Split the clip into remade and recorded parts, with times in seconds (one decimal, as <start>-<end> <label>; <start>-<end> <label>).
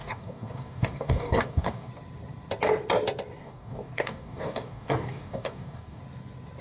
0.0-1.9 remade; 1.9-3.4 recorded; 3.4-6.0 remade; 6.0-6.6 recorded